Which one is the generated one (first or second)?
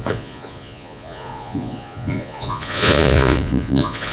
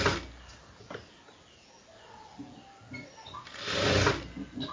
first